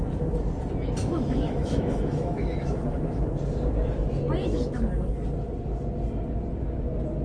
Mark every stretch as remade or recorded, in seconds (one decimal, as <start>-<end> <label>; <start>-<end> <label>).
0.0-1.0 recorded; 1.0-3.4 remade; 3.4-4.4 recorded; 4.4-4.9 remade; 4.9-7.2 recorded